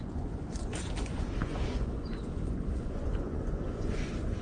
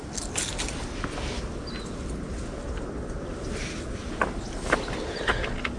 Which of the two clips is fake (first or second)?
first